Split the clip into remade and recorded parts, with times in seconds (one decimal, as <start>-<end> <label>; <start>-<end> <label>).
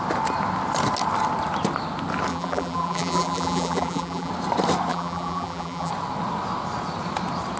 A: 0.0-2.3 recorded; 2.3-4.3 remade; 4.3-4.9 recorded; 4.9-5.9 remade; 5.9-7.6 recorded